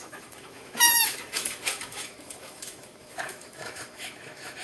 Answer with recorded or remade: remade